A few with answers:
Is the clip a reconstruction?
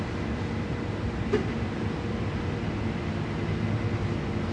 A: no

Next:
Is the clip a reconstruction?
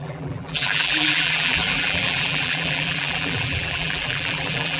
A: yes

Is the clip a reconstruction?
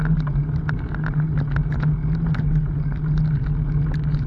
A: no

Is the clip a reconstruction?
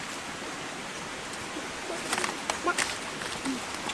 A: no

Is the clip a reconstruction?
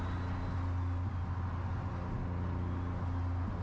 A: no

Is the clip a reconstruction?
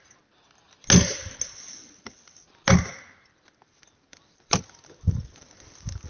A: no